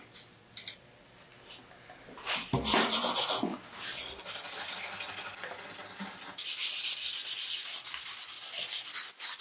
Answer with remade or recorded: recorded